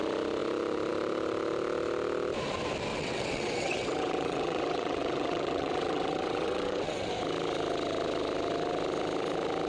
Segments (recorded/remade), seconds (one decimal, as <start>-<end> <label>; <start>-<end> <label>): 0.0-2.9 recorded; 2.9-7.1 remade; 7.1-9.7 recorded